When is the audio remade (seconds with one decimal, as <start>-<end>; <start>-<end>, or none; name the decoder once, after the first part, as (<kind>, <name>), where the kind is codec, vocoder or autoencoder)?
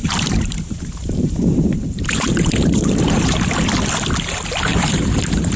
0.0-3.4 (vocoder, BigVGAN v2); 4.7-5.6